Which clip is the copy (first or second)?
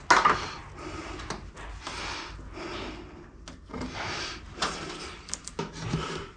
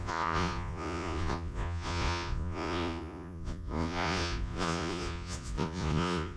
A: second